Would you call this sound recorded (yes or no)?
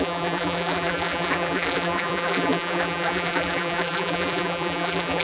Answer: no